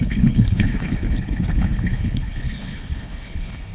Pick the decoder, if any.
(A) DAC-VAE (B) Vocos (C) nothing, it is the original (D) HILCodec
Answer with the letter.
D